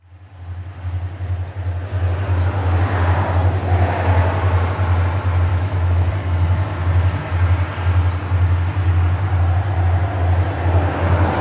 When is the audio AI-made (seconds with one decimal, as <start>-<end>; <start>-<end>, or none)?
5.5-6.1